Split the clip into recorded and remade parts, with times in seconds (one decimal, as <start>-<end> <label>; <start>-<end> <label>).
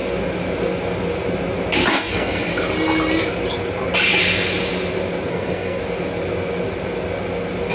0.0-1.9 recorded; 1.9-2.5 remade; 2.5-5.3 recorded; 5.3-5.8 remade; 5.8-7.7 recorded